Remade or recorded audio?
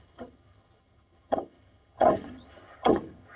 remade